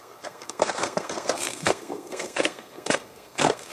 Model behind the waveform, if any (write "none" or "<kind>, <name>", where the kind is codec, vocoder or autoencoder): codec, SNAC